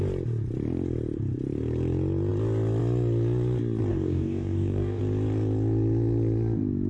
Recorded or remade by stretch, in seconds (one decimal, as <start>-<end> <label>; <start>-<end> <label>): 0.0-3.9 recorded; 3.9-5.0 remade; 5.0-6.9 recorded